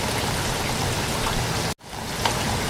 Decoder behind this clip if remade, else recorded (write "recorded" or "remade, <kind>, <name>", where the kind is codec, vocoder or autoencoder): recorded